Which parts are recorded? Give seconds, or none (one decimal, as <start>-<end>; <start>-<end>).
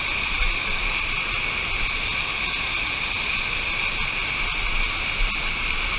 0.0-6.0